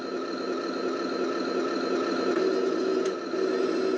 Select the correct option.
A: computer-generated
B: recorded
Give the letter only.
B